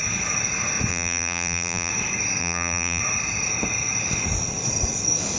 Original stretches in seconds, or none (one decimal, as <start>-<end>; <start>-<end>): 0.0-0.9; 1.9-2.4; 3.0-5.4